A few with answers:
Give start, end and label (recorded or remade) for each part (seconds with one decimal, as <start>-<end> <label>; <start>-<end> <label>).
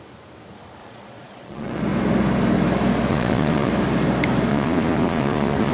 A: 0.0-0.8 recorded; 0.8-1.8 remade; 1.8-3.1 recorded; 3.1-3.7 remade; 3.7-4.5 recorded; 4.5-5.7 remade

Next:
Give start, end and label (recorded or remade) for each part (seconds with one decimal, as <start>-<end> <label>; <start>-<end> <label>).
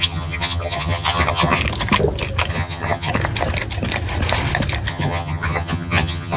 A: 0.0-1.6 remade; 1.6-2.5 recorded; 2.5-3.1 remade; 3.1-4.9 recorded; 4.9-6.4 remade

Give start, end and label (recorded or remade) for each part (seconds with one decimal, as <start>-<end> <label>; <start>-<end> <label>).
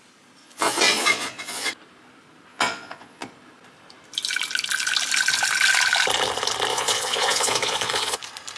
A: 0.0-0.4 recorded; 0.4-1.7 remade; 1.7-2.5 recorded; 2.5-3.3 remade; 3.3-6.7 recorded; 6.7-8.2 remade; 8.2-8.6 recorded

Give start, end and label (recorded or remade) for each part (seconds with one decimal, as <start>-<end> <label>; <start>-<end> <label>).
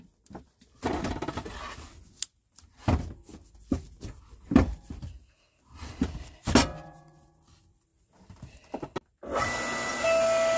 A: 0.0-10.6 recorded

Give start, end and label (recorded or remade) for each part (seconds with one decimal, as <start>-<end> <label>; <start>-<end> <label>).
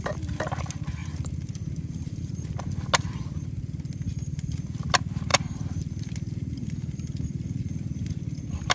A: 0.0-1.0 recorded; 1.0-2.3 remade; 2.3-8.7 recorded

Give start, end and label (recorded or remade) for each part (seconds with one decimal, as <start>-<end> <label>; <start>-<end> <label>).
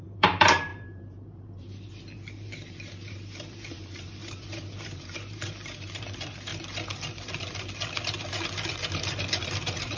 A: 0.0-6.5 remade; 6.5-9.4 recorded; 9.4-10.0 remade